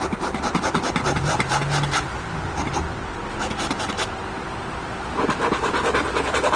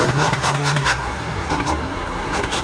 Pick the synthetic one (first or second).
second